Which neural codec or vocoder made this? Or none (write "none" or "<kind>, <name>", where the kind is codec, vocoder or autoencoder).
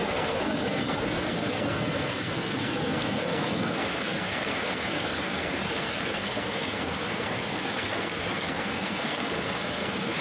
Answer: codec, SNAC